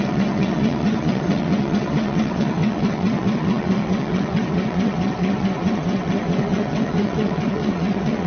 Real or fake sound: fake